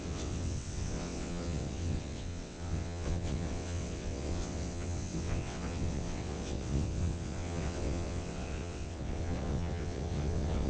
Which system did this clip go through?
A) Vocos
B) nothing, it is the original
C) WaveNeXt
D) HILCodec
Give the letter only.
C